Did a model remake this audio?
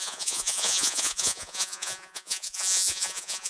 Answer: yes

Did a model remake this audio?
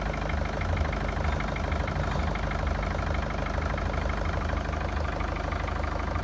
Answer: no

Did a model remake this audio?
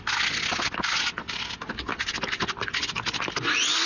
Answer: no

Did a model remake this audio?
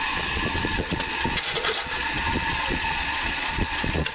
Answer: yes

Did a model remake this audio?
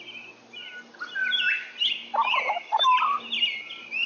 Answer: no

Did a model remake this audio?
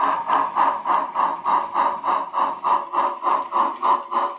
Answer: no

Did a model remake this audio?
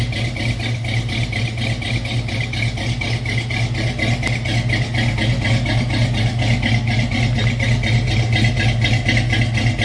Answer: no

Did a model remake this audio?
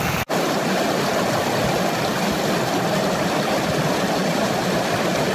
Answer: no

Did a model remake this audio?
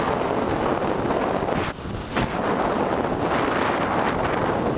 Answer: no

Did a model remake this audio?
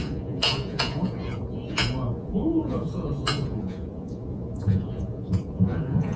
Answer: yes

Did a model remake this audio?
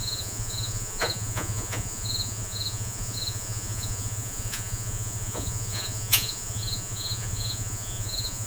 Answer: yes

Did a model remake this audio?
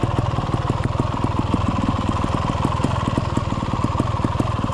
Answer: no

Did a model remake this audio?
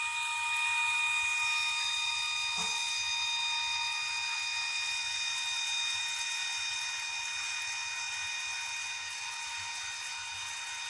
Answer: no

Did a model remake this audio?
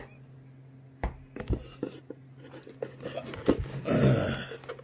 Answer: no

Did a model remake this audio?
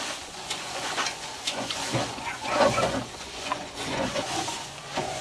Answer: yes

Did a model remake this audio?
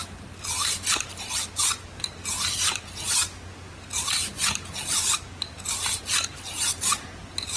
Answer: no